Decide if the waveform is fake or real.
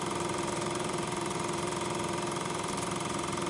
fake